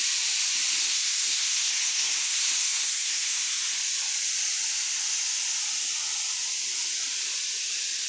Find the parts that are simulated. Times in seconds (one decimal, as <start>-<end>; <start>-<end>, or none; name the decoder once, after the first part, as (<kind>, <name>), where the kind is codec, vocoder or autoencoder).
0.8-3.5 (codec, SNAC)